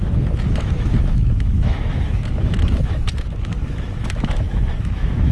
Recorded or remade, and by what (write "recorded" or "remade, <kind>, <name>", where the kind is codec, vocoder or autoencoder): remade, autoencoder, DAC-VAE